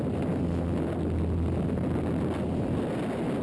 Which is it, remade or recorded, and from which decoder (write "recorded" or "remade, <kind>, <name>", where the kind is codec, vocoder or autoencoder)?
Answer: recorded